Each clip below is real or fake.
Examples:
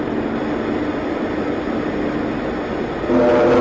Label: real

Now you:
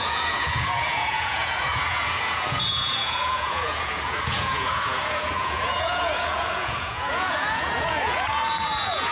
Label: fake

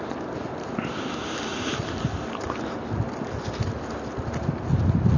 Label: real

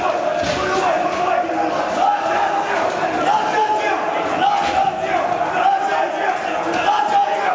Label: real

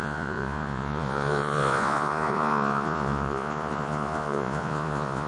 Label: fake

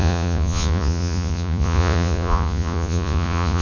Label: fake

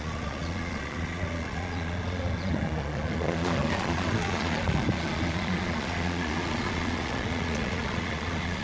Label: fake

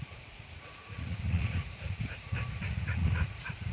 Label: fake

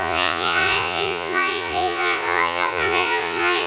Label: fake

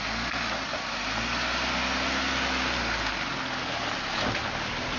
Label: real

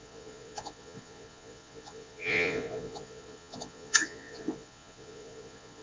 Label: fake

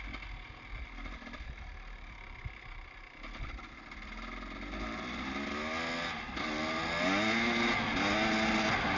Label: real